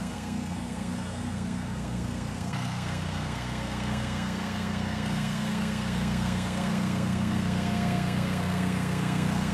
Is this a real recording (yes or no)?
no